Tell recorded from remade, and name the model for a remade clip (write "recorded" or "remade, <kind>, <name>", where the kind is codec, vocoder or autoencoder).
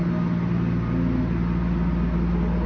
recorded